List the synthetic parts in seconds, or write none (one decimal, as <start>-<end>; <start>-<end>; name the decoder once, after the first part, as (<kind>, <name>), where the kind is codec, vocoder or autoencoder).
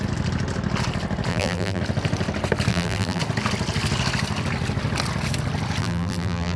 1.3-1.8 (vocoder, BigVGAN v2); 2.7-3.2; 5.8-6.6